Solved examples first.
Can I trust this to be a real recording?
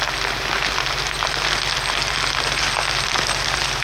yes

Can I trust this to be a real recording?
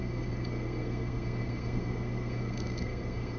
no